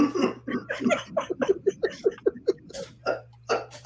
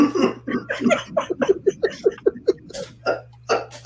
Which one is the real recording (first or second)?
second